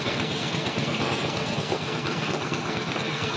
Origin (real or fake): fake